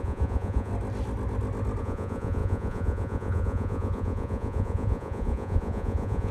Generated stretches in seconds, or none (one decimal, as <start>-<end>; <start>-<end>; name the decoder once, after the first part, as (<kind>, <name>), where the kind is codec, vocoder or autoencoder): 0.0-0.7 (vocoder, Vocos); 1.8-6.3